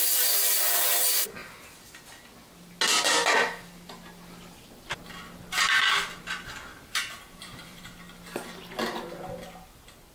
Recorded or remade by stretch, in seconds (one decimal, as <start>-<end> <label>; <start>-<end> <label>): 0.0-6.7 recorded; 6.7-7.8 remade; 7.8-10.1 recorded

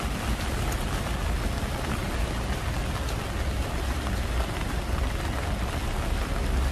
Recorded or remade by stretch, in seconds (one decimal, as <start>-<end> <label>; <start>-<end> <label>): 0.0-6.7 recorded

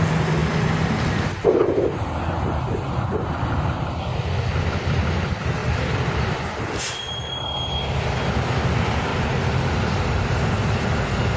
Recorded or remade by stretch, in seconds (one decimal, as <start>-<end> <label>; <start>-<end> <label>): 0.0-5.6 recorded; 5.6-7.4 remade; 7.4-11.4 recorded